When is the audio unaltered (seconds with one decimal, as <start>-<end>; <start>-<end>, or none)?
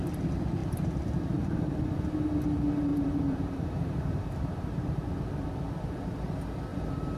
0.0-0.6; 1.8-2.9; 5.1-6.7